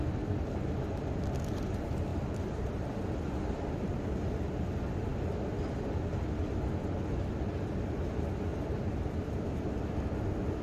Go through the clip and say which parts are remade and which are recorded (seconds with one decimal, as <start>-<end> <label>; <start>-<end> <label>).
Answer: 0.0-2.1 recorded; 2.1-3.7 remade; 3.7-8.5 recorded; 8.5-9.3 remade; 9.3-10.6 recorded